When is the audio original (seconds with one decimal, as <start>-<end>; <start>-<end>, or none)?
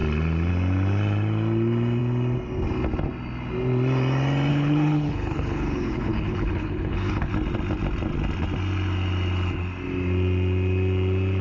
0.0-4.5; 7.3-11.4